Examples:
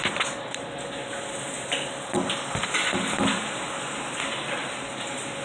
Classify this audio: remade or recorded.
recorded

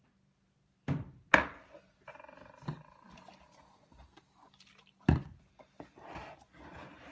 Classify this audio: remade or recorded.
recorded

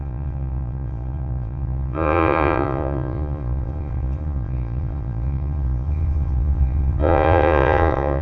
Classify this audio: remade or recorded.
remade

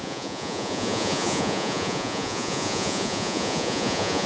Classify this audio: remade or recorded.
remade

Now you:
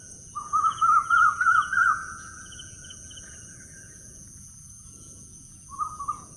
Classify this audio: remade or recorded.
remade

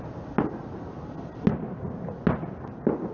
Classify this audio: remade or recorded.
recorded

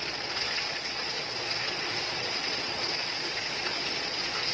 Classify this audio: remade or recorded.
remade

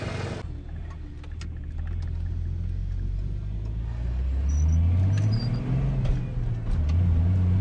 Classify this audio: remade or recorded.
recorded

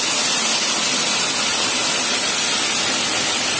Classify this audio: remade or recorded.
recorded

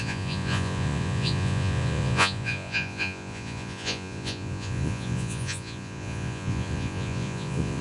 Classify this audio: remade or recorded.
remade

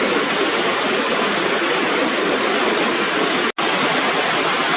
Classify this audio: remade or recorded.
recorded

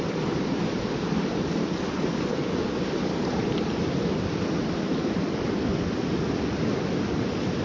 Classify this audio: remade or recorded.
recorded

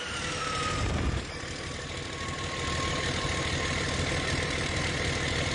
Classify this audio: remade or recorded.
recorded